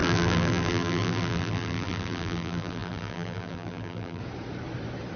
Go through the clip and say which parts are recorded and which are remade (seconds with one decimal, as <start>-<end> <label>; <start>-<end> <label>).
0.0-4.2 remade; 4.2-5.2 recorded